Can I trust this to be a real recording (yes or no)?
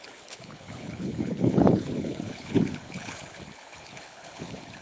no